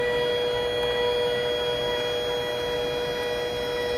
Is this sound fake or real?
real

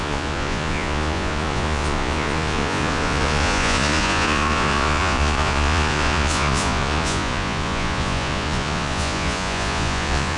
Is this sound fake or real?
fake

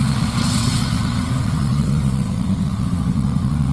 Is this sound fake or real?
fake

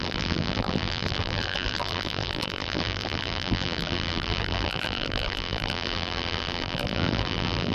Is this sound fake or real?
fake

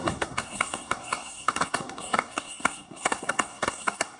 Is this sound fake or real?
fake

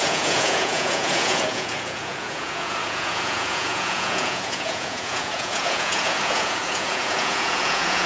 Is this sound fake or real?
fake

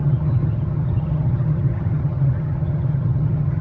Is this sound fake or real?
fake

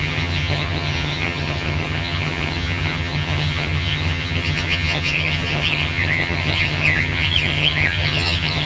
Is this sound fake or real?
fake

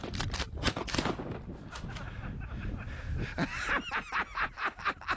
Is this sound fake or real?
real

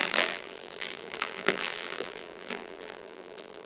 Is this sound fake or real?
fake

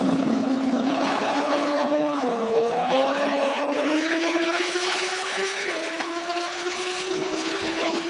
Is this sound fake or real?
fake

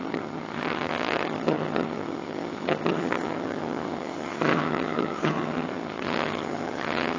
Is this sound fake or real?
fake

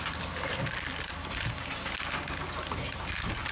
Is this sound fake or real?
real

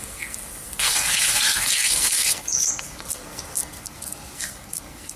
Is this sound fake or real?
fake